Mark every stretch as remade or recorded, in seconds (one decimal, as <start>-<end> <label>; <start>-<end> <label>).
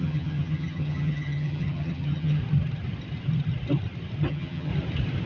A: 0.0-2.4 remade; 2.4-4.3 recorded; 4.3-4.7 remade; 4.7-5.3 recorded